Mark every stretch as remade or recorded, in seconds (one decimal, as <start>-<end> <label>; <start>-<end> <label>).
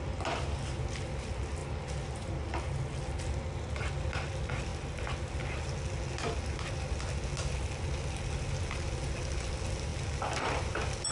0.0-11.1 recorded